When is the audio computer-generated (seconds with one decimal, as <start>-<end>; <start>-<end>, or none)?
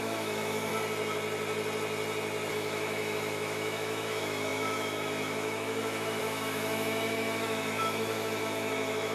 0.0-0.7; 2.5-9.1